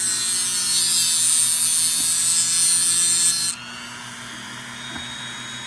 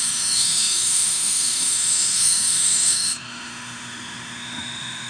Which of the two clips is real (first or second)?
first